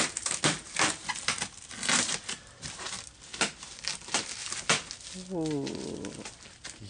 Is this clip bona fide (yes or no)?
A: yes